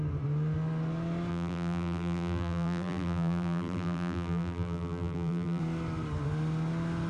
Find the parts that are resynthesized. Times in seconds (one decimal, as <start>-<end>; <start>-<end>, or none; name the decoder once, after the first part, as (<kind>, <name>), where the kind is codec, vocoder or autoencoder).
1.3-5.6 (vocoder, BigVGAN v2)